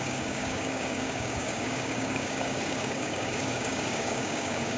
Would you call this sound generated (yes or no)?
yes